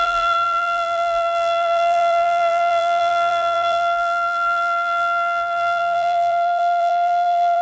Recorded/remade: remade